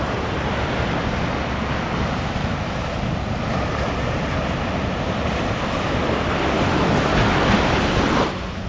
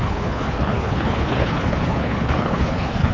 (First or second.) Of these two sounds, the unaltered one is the first